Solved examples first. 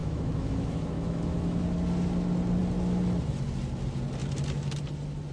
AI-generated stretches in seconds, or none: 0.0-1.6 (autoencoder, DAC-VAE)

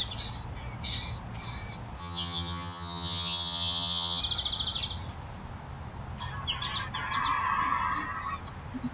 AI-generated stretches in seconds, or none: 2.0-4.2 (vocoder, HiFi-GAN)

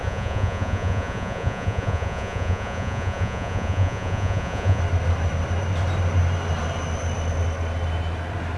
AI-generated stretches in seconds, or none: 0.0-4.8 (vocoder, Vocos)

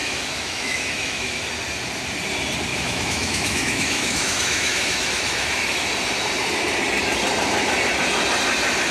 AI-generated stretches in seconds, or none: 0.0-1.4 (autoencoder, DAC-VAE); 2.7-5.9

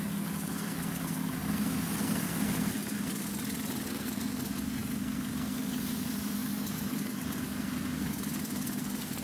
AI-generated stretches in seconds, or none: 0.0-3.3 (codec, SNAC); 3.9-9.2

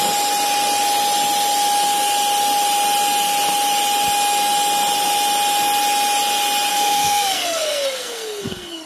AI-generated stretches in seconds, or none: 6.7-8.9 (codec, SNAC)